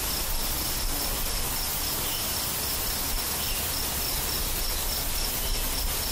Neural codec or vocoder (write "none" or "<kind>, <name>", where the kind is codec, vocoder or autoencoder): none